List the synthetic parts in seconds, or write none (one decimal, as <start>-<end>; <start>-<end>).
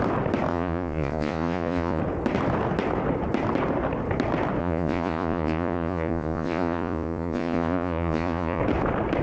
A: 0.5-2.0; 4.6-8.6